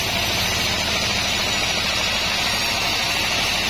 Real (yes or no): yes